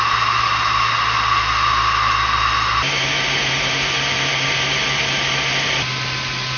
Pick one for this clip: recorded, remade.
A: recorded